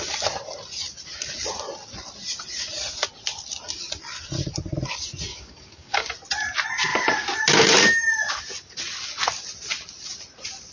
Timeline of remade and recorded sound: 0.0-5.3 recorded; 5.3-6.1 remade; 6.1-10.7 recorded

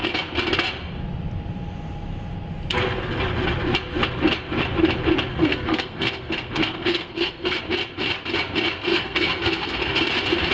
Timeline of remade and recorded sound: 0.0-5.3 recorded; 5.3-7.6 remade; 7.6-8.9 recorded; 8.9-10.0 remade; 10.0-10.5 recorded